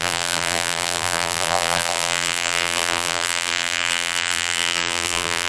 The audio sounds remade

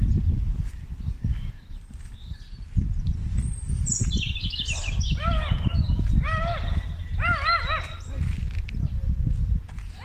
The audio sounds recorded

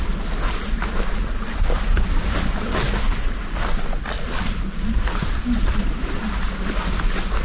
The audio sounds recorded